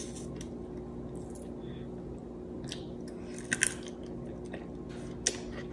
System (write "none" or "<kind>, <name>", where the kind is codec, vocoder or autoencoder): none